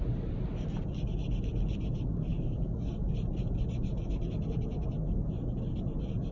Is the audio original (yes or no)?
yes